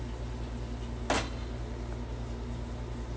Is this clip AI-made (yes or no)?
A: no